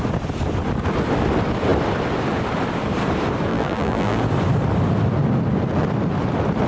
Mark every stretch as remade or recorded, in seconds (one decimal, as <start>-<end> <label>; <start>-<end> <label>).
0.0-3.5 recorded; 3.5-4.2 remade; 4.2-6.7 recorded